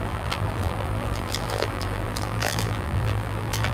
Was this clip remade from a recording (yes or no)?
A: yes